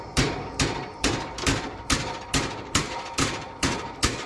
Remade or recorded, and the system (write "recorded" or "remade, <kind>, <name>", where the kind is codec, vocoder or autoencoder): remade, vocoder, BigVGAN v2